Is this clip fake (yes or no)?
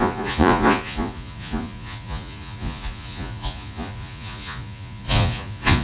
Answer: yes